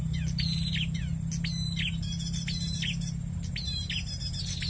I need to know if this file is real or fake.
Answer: real